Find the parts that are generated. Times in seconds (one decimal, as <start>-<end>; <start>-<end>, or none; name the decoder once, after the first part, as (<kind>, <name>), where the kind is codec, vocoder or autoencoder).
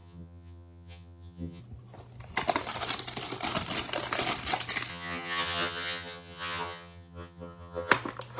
0.0-1.6 (vocoder, HiFi-GAN); 4.9-7.9